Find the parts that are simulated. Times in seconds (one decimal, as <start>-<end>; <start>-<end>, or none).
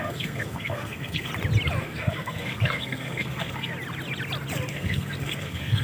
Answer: 0.0-1.3; 1.8-3.7; 4.7-5.8